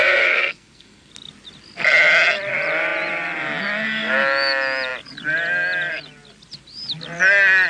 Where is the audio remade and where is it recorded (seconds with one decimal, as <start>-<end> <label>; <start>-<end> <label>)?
0.0-1.1 remade; 1.1-7.7 recorded